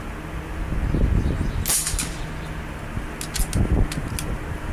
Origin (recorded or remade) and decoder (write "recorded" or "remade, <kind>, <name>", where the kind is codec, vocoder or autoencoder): recorded